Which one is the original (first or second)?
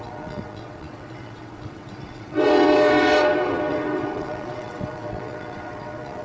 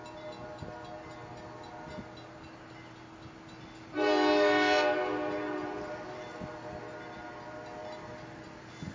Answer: second